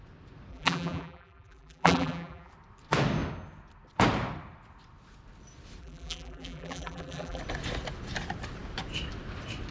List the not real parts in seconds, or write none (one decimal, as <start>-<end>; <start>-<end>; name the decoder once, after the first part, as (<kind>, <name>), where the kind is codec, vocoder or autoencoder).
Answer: 0.5-2.5 (vocoder, BigVGAN v2); 5.8-7.4